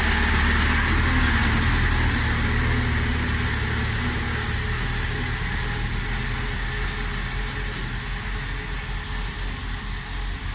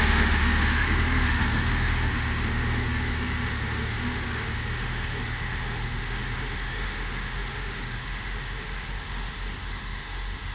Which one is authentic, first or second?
first